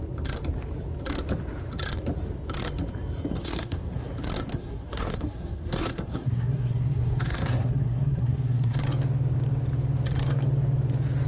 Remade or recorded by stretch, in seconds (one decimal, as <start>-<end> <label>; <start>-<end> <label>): 0.0-3.4 recorded; 3.4-4.1 remade; 4.1-4.5 recorded; 4.5-8.8 remade; 8.8-11.3 recorded

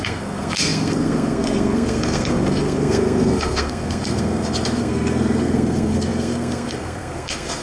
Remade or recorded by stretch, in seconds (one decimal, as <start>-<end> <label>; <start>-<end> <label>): 0.0-7.6 remade

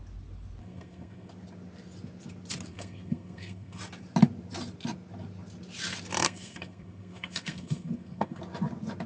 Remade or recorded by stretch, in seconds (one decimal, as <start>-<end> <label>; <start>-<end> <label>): 0.0-0.6 recorded; 0.6-1.3 remade; 1.3-2.7 recorded; 2.7-3.8 remade; 3.8-6.2 recorded; 6.2-8.4 remade; 8.4-9.1 recorded